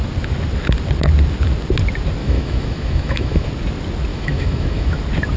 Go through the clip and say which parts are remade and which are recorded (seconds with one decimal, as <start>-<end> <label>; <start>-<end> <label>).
0.0-2.2 recorded; 2.2-3.5 remade; 3.5-4.1 recorded; 4.1-5.0 remade; 5.0-5.4 recorded